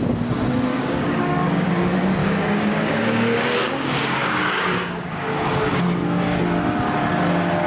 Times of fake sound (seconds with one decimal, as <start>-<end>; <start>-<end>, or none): 0.7-1.7; 2.2-6.4